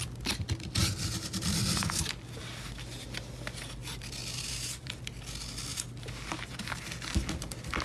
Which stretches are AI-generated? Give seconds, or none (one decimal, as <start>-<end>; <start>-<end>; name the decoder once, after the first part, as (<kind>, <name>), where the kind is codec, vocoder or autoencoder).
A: 0.8-1.6 (vocoder, BigVGAN v2); 3.8-5.0

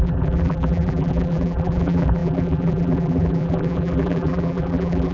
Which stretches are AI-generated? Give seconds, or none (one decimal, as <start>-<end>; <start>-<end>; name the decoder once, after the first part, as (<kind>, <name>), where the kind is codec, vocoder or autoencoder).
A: 0.0-5.1 (vocoder, BigVGAN v2)

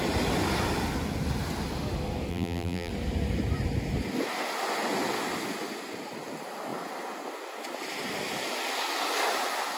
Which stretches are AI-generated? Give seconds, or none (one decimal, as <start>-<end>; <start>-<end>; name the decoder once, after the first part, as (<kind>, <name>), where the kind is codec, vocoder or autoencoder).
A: 2.3-2.9 (vocoder, BigVGAN v2)

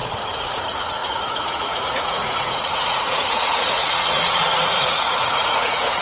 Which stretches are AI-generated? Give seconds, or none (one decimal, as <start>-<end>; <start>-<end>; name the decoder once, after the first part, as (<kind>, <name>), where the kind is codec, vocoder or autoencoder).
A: 0.0-6.0 (vocoder, Vocos)